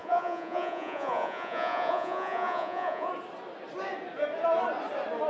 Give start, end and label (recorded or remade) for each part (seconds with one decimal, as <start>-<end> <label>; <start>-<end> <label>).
0.0-3.1 remade; 3.1-5.3 recorded